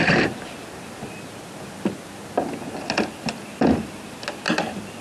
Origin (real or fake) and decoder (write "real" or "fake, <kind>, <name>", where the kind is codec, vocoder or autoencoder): real